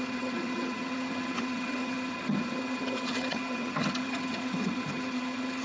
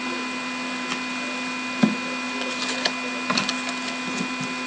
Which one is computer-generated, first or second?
first